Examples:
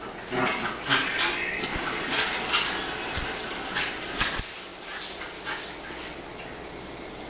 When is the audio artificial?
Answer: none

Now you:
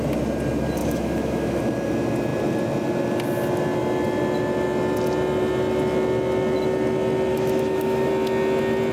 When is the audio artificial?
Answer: 0.8-1.6 (autoencoder, DAC-VAE); 7.3-8.1